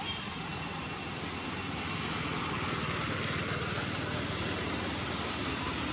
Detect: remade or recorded recorded